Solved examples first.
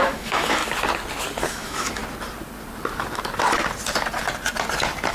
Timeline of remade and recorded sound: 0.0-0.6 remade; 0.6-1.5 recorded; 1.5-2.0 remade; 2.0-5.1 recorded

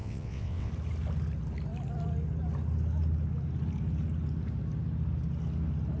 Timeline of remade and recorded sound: 0.0-0.7 remade; 0.7-6.0 recorded

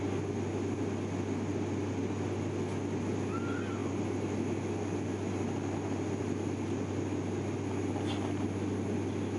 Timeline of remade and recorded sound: 0.0-9.4 recorded

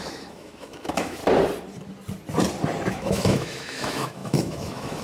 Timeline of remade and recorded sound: 0.0-1.2 remade; 1.2-2.9 recorded; 2.9-5.0 remade

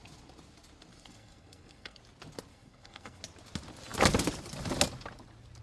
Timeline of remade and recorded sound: 0.0-0.9 recorded; 0.9-2.0 remade; 2.0-2.5 recorded; 2.5-3.2 remade; 3.2-5.6 recorded